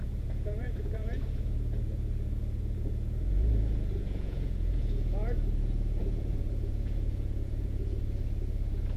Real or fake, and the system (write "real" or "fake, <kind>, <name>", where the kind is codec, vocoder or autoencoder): fake, vocoder, Vocos